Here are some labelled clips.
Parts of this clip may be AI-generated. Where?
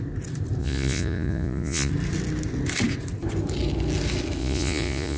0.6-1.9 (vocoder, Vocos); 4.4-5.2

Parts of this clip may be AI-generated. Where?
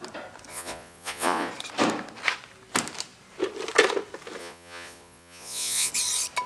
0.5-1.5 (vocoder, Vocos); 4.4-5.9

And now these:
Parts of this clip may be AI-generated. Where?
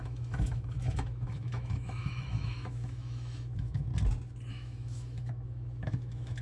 0.0-3.9 (autoencoder, DAC-VAE); 4.5-6.4